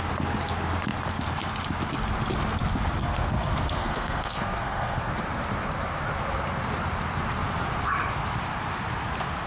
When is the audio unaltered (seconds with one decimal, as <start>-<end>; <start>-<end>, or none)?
0.0-3.0; 5.1-9.5